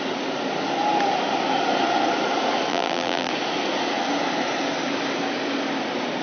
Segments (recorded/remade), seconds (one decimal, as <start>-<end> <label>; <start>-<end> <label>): 0.0-2.7 recorded; 2.7-3.3 remade; 3.3-6.2 recorded